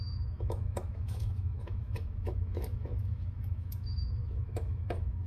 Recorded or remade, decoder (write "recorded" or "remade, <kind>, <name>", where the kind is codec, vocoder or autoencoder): remade, autoencoder, DAC-VAE